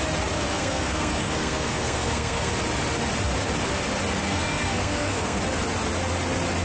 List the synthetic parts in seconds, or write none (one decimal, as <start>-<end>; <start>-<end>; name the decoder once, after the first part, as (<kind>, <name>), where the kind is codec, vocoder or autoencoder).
0.5-2.5 (codec, SNAC); 4.2-5.4